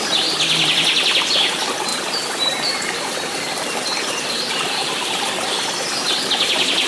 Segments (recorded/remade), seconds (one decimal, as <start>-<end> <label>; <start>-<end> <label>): 0.0-1.9 recorded; 1.9-5.3 remade; 5.3-6.9 recorded